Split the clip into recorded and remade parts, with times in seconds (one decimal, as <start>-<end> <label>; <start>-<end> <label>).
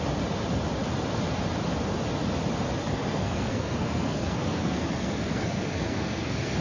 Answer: 0.0-2.8 recorded; 2.8-6.6 remade